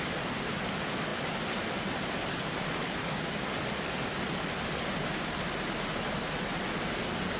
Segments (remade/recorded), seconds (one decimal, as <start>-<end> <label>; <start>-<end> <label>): 0.0-3.0 recorded; 3.0-3.6 remade; 3.6-7.4 recorded